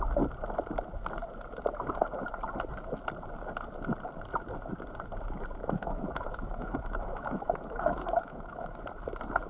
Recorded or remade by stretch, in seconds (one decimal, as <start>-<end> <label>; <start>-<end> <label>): 0.0-5.6 recorded; 5.6-8.8 remade; 8.8-9.5 recorded